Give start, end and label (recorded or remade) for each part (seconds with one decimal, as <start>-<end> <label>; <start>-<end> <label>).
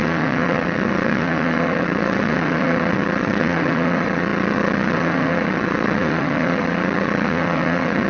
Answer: 0.0-8.1 remade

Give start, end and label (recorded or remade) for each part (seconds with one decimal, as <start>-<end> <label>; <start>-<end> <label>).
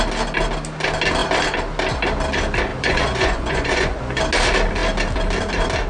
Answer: 0.0-2.7 recorded; 2.7-4.2 remade; 4.2-5.9 recorded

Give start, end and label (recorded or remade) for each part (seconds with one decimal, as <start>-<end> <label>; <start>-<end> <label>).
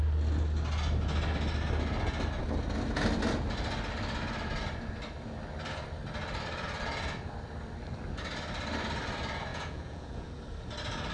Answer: 0.0-9.5 recorded; 9.5-10.4 remade; 10.4-11.1 recorded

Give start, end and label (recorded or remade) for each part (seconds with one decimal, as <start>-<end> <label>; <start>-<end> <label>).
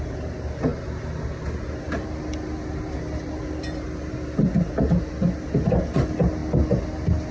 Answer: 0.0-7.3 recorded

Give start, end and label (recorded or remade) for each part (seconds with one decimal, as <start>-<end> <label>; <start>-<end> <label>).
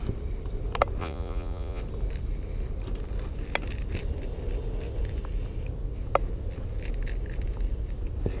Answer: 0.0-1.0 recorded; 1.0-1.8 remade; 1.8-8.4 recorded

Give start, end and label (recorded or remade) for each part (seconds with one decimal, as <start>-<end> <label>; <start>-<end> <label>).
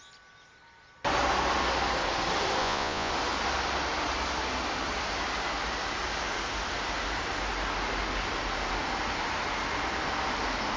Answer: 0.0-2.6 recorded; 2.6-3.1 remade; 3.1-10.8 recorded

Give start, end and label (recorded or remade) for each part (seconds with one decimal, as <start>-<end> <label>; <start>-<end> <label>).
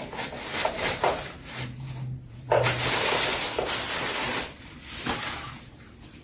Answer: 0.0-0.6 recorded; 0.6-2.8 remade; 2.8-6.2 recorded